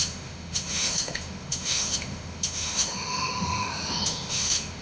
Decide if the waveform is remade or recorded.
remade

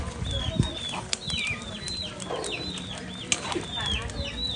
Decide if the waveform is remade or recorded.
recorded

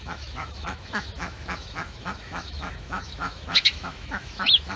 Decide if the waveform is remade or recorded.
remade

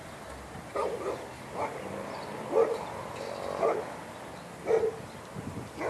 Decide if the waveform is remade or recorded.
recorded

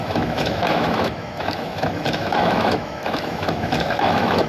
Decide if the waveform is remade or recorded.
remade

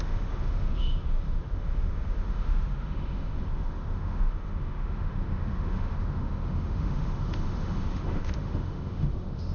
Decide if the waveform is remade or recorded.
remade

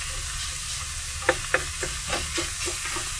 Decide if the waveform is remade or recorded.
recorded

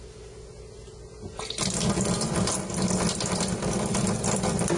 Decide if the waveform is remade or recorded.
recorded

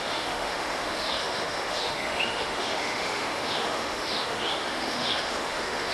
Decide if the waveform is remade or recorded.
remade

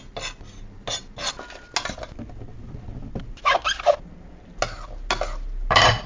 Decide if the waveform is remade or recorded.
recorded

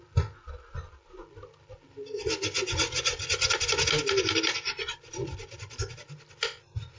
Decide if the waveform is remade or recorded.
recorded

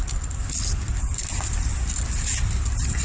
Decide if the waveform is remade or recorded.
recorded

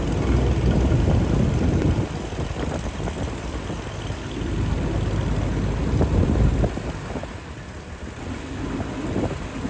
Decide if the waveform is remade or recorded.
recorded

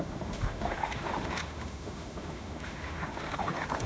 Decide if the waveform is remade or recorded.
remade